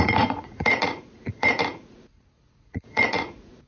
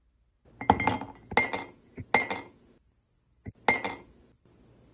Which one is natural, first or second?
second